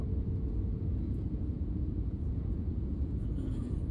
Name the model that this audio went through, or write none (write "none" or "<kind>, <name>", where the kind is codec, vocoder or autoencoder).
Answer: vocoder, Vocos